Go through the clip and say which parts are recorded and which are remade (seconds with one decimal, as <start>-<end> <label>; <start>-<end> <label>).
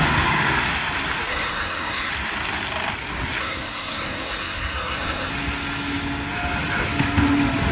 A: 0.0-1.3 recorded; 1.3-2.1 remade; 2.1-3.4 recorded; 3.4-5.3 remade; 5.3-7.7 recorded